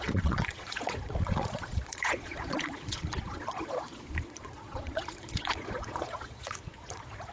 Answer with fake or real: fake